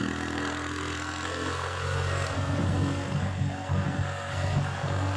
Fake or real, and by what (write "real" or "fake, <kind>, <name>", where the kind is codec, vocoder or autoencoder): fake, codec, SNAC